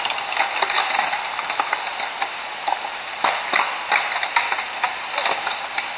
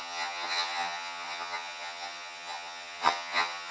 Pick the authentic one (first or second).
first